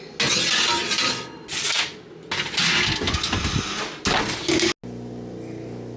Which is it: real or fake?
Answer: real